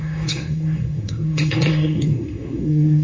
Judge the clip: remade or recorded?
remade